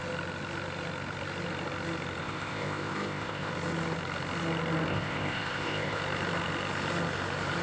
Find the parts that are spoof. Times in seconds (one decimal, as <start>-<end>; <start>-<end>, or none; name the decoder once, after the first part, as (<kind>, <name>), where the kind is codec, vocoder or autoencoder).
2.2-3.5 (codec, ZipCodec); 4.9-6.0